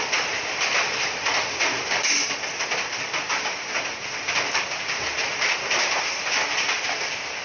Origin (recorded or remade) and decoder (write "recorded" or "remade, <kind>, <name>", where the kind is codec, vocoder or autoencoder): remade, vocoder, BigVGAN v2